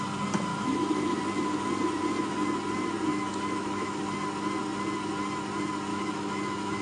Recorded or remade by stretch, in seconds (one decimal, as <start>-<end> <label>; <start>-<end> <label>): 0.0-0.5 recorded; 0.5-1.2 remade; 1.2-3.1 recorded; 3.1-4.0 remade; 4.0-5.9 recorded; 5.9-6.8 remade